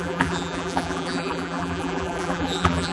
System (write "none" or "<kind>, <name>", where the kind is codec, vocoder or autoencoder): vocoder, BigVGAN v2